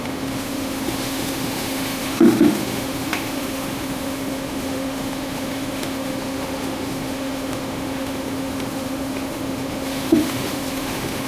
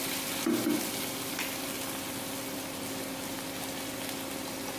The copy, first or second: first